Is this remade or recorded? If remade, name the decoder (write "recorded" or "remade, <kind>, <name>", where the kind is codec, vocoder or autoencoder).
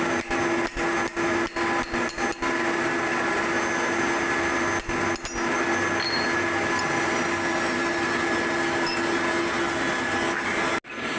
recorded